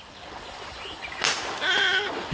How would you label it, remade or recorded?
recorded